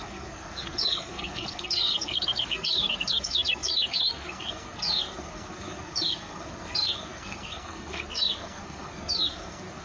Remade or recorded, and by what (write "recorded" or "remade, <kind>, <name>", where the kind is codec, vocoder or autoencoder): remade, codec, SNAC